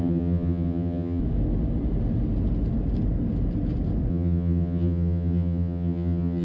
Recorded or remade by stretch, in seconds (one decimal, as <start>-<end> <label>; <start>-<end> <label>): 0.0-1.2 remade; 1.2-4.1 recorded; 4.1-6.4 remade